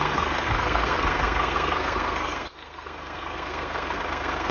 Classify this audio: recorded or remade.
remade